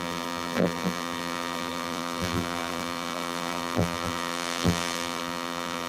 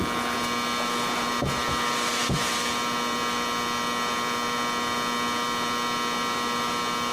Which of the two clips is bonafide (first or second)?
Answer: second